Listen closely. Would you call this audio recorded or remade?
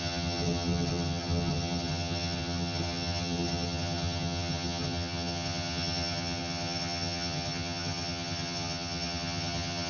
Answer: remade